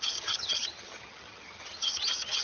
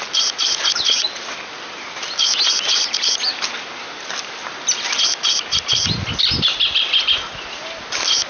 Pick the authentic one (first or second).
second